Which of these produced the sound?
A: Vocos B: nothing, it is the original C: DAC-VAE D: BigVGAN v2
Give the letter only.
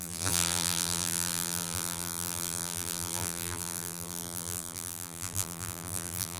D